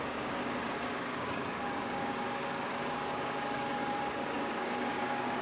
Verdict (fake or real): fake